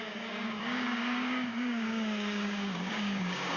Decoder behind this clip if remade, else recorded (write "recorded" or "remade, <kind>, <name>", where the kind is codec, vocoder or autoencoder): remade, codec, DAC